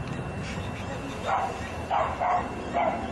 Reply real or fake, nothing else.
real